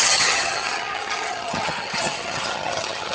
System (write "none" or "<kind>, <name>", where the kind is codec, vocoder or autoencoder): vocoder, HiFi-GAN